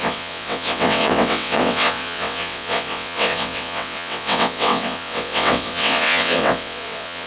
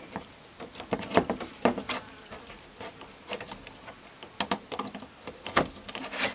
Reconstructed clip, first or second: first